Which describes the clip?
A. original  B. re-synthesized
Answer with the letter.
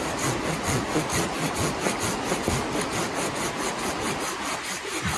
A